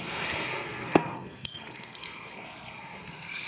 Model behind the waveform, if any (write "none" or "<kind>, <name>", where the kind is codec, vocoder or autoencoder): codec, SNAC